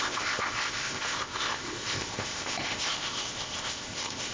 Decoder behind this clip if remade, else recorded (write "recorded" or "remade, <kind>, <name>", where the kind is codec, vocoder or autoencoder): remade, codec, ZipCodec